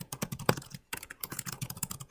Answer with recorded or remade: remade